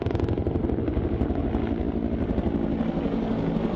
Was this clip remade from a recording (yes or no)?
no